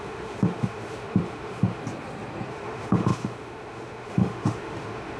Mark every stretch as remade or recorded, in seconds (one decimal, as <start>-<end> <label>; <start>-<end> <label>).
0.0-1.8 remade; 1.8-2.5 recorded; 2.5-5.2 remade